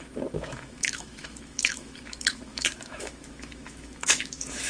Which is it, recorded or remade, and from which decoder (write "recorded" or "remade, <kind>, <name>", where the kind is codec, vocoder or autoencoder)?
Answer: remade, autoencoder, DAC-VAE